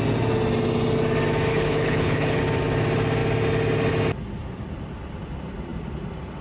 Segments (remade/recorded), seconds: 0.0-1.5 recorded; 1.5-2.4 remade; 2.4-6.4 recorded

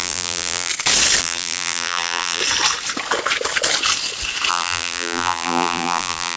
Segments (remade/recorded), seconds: 0.0-0.7 remade; 0.7-1.2 recorded; 1.2-2.4 remade; 2.4-4.5 recorded; 4.5-6.4 remade